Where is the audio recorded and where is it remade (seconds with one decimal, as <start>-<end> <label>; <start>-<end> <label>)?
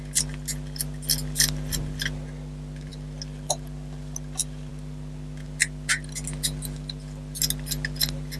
0.0-8.4 recorded